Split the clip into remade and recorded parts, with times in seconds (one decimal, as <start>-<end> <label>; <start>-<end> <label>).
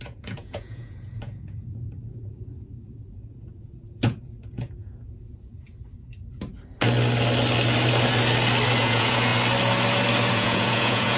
0.0-5.5 remade; 5.5-8.8 recorded; 8.8-9.3 remade; 9.3-10.3 recorded; 10.3-11.2 remade